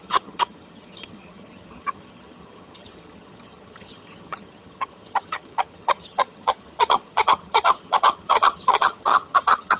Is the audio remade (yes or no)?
yes